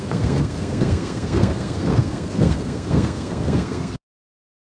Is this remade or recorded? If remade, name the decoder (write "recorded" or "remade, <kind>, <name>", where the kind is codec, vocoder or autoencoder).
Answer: remade, codec, SNAC